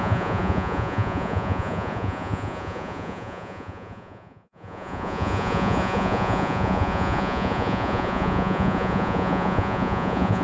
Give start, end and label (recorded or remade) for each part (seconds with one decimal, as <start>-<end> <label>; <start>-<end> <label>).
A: 0.0-10.4 remade